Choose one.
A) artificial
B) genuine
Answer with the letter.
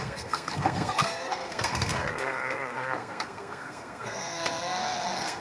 A